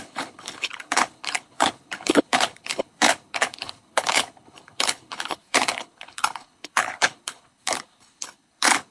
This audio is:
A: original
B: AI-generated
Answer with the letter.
B